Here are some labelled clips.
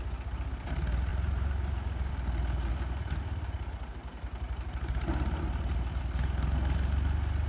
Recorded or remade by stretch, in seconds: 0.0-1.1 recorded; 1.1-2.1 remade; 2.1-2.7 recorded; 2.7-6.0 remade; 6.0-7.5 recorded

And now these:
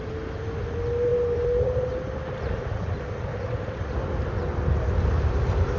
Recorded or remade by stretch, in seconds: 0.0-5.8 recorded

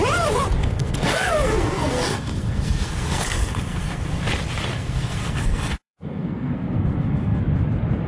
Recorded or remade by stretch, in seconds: 0.0-0.6 recorded; 0.6-4.2 remade; 4.2-4.7 recorded; 4.7-7.4 remade; 7.4-8.1 recorded

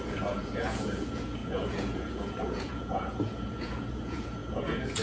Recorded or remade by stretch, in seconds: 0.0-5.0 remade